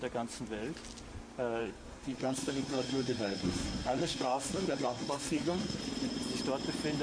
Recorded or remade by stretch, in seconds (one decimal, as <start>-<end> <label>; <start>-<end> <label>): 0.0-1.6 recorded; 1.6-5.8 remade; 5.8-7.0 recorded